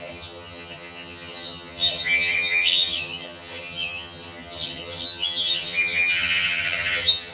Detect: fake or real fake